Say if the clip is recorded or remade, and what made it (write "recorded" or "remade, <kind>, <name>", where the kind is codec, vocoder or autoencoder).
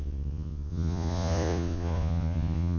remade, vocoder, Vocos